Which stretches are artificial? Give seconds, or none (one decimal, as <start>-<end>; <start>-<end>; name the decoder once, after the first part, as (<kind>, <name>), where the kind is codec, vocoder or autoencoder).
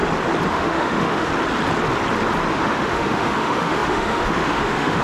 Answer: 0.5-1.3 (autoencoder, DAC-VAE); 2.5-5.0